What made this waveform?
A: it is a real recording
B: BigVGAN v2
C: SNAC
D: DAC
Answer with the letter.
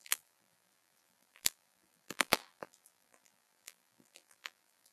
B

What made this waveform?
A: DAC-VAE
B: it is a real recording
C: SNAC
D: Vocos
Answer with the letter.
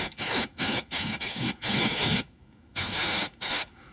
A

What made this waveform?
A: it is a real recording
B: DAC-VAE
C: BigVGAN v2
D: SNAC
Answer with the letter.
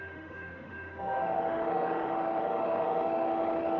B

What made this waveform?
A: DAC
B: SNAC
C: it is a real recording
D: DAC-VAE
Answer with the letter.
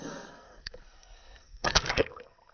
B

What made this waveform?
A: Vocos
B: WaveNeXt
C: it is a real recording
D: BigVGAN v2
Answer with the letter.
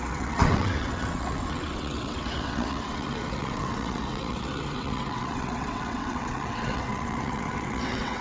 B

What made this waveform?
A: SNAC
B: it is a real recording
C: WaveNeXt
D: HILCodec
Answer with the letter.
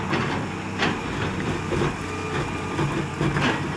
B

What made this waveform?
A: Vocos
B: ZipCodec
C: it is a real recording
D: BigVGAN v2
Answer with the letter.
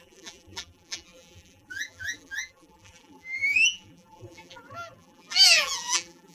D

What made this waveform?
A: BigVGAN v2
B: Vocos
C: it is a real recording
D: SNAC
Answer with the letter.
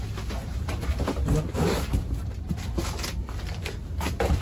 C